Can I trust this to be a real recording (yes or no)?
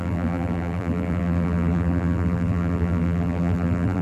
no